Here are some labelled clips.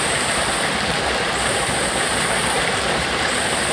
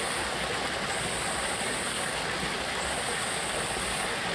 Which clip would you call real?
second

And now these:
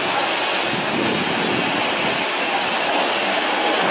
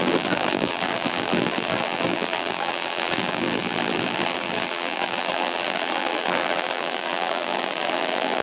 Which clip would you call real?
first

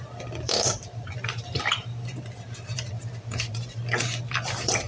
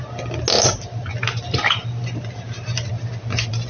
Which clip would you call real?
second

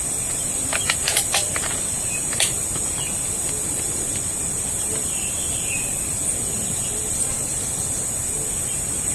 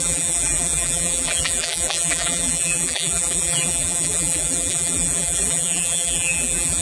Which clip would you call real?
first